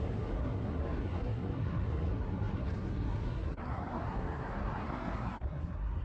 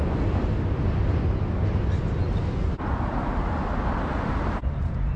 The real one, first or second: second